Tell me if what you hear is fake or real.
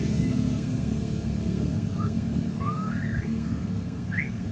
fake